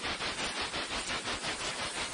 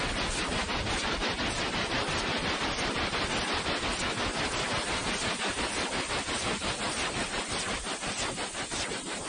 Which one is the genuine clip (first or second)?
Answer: second